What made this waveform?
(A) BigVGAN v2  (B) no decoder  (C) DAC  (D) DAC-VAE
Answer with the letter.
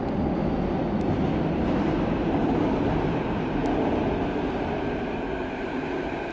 B